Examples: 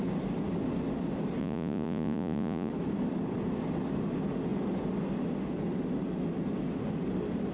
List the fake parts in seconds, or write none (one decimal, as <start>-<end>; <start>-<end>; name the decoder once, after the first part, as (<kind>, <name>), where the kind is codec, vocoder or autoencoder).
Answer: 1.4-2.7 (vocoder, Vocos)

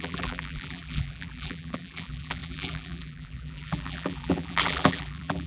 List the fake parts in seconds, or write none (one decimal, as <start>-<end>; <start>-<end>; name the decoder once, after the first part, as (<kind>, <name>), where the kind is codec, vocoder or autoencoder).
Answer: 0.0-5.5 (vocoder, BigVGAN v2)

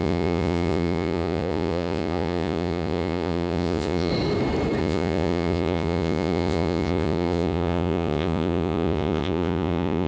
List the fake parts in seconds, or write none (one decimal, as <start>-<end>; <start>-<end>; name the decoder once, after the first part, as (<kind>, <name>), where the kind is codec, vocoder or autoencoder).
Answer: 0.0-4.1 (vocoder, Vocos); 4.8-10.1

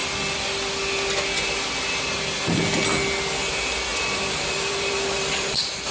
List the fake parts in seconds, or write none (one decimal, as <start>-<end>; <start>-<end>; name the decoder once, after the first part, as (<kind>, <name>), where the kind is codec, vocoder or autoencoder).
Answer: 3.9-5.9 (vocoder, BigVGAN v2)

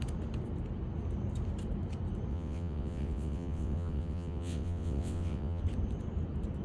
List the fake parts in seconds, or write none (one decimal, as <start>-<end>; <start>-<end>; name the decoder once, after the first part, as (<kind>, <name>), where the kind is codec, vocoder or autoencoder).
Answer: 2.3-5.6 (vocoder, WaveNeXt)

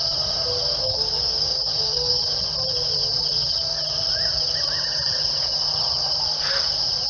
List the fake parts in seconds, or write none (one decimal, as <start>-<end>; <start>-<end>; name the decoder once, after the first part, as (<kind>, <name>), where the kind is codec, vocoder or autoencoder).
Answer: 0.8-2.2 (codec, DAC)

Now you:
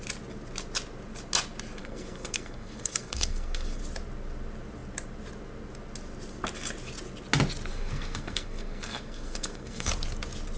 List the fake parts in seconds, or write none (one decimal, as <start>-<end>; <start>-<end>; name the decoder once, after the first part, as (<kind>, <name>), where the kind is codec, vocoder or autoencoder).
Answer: 1.8-3.8 (codec, SNAC); 7.7-9.9

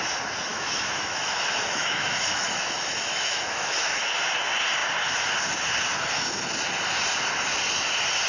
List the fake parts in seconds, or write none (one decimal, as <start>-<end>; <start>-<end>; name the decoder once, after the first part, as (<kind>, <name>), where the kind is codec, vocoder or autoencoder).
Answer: 0.5-4.0 (autoencoder, DAC-VAE)